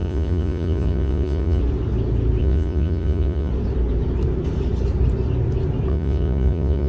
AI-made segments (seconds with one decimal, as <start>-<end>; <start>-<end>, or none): 0.0-1.6; 2.4-3.5; 5.9-6.9